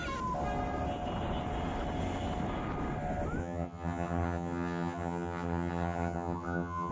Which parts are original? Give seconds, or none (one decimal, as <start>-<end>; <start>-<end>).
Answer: 0.0-3.4